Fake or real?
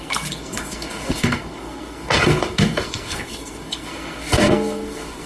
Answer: fake